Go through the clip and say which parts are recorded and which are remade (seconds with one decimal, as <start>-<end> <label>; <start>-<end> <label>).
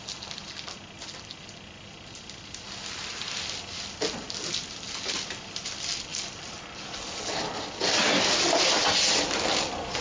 0.0-10.0 recorded